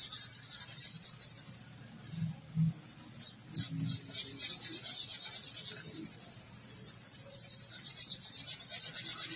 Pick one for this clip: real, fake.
real